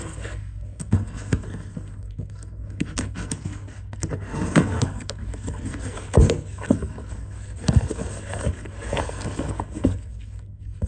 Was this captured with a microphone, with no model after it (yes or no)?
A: no